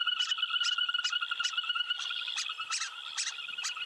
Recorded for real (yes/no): yes